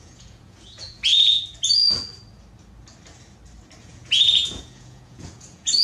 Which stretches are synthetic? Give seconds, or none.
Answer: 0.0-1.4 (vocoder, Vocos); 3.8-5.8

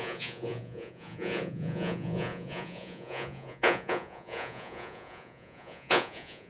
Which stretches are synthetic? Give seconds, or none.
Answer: 0.0-6.5 (vocoder, Vocos)

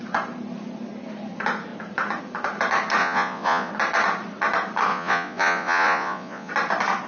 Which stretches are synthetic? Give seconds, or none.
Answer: 3.0-3.7 (vocoder, Vocos); 4.9-6.5

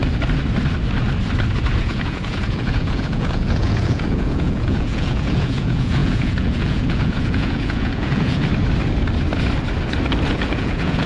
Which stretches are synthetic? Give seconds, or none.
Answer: 1.8-8.5 (vocoder, Vocos); 10.3-11.1

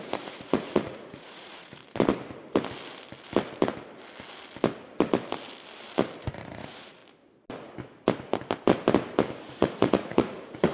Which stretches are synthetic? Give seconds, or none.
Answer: 0.0-1.8 (vocoder, Vocos); 6.3-7.0; 9.5-10.7